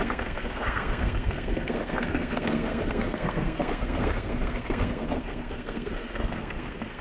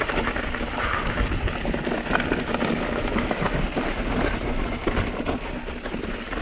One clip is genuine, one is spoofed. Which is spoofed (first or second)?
first